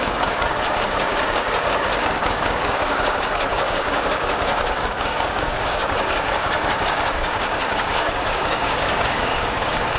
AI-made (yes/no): yes